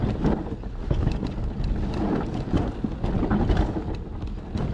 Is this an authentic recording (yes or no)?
yes